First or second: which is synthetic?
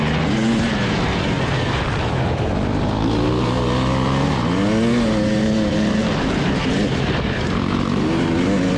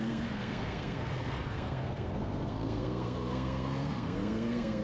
second